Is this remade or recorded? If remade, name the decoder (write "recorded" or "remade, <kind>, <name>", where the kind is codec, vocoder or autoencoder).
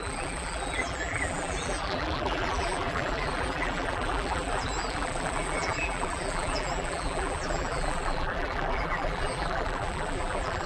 remade, vocoder, BigVGAN v2